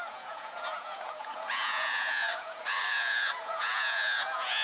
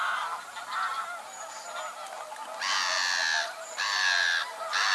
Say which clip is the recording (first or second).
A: second